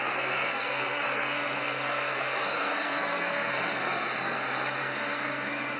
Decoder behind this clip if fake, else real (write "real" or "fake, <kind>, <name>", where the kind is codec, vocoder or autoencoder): fake, codec, SNAC